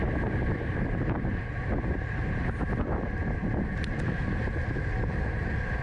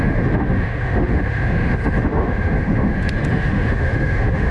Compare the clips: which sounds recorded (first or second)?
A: first